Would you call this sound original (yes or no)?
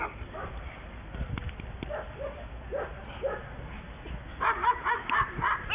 yes